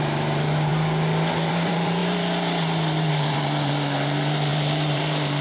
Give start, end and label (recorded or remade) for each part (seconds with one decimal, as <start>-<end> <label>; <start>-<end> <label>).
0.0-0.7 remade; 0.7-1.5 recorded; 1.5-5.4 remade